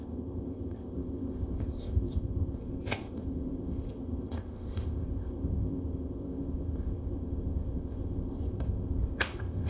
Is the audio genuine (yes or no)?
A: no